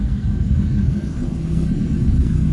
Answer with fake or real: fake